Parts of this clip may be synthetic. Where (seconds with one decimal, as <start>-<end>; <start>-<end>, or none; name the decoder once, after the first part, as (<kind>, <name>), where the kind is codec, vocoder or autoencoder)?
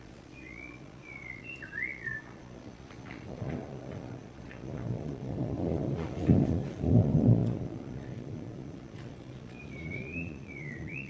0.0-11.1 (vocoder, Vocos)